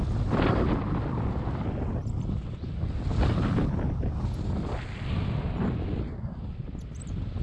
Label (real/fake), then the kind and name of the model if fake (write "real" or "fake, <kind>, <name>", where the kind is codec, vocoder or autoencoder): real